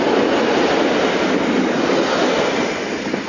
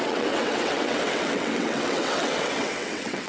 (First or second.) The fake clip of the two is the second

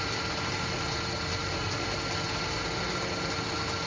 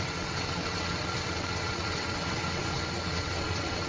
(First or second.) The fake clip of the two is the second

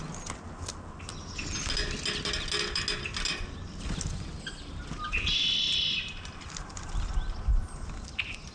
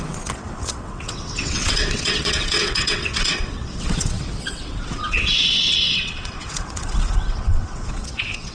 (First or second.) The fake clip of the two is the second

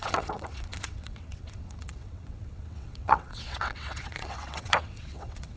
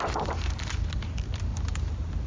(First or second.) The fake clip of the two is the first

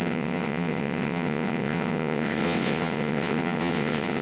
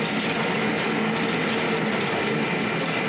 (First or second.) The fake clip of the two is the first